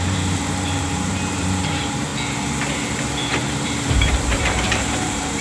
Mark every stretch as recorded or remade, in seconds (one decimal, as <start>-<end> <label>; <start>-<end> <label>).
0.0-2.1 remade; 2.1-3.3 recorded; 3.3-5.4 remade